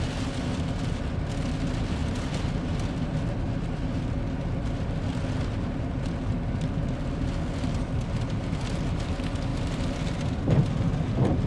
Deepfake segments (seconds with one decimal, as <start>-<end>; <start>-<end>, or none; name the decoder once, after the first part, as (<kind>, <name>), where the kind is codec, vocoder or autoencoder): 9.5-10.3 (vocoder, BigVGAN v2)

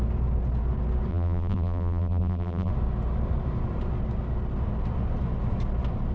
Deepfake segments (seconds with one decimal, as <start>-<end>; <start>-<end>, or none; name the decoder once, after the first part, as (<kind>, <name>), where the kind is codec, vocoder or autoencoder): 1.1-2.7 (vocoder, BigVGAN v2)

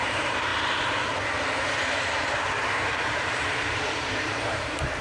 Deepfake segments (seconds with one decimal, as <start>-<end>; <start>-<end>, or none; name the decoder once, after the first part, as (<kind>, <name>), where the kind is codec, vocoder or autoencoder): 0.0-0.5 (vocoder, BigVGAN v2); 1.6-5.0

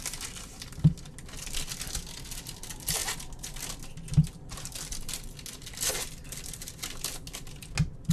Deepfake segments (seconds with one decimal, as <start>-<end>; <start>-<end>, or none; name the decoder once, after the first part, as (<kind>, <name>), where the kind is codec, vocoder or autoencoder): none

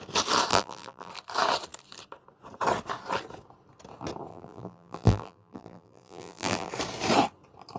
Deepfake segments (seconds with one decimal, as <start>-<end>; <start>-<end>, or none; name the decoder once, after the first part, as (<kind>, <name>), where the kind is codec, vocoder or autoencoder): 0.5-1.1 (vocoder, BigVGAN v2); 4.3-6.7

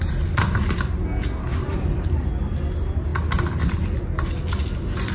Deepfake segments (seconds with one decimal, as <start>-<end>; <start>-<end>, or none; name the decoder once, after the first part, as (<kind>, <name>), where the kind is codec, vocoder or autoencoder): 1.5-2.1 (vocoder, BigVGAN v2)

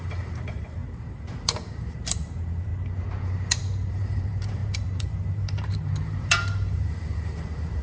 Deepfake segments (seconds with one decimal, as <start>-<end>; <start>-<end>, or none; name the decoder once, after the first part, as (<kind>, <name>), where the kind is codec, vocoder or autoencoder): 0.0-2.7 (vocoder, BigVGAN v2); 3.9-7.8

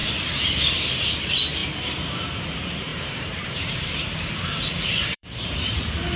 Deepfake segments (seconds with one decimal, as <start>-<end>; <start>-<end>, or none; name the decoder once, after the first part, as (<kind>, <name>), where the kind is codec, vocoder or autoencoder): 0.0-6.2 (vocoder, BigVGAN v2)